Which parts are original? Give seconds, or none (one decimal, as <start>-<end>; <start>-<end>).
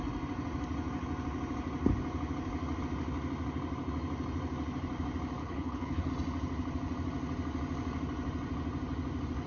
0.0-5.4; 6.1-9.5